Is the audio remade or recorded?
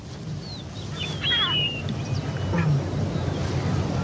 recorded